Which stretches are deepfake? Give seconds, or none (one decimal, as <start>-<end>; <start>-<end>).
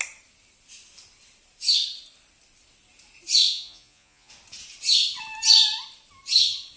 3.5-4.3